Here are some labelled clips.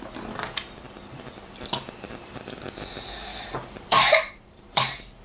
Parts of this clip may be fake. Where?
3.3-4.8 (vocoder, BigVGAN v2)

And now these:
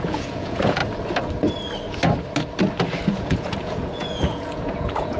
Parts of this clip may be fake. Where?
0.0-0.8 (vocoder, Vocos); 3.1-5.2

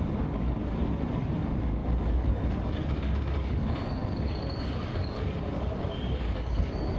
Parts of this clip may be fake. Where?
0.0-7.0 (codec, DAC)

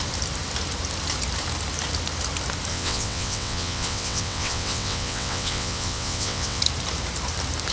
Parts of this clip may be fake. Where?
2.7-6.6 (vocoder, WaveNeXt)

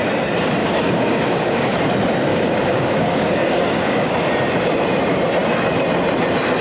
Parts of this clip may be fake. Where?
0.6-1.8 (codec, DAC); 2.3-4.3

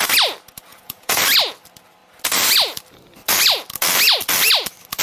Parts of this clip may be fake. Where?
0.7-1.2 (vocoder, Vocos)

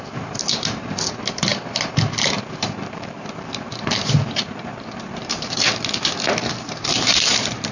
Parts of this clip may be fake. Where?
0.0-5.7 (vocoder, BigVGAN v2); 6.5-7.7